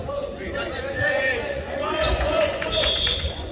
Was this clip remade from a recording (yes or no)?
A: yes